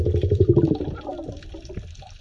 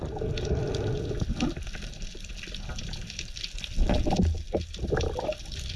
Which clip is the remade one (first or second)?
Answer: first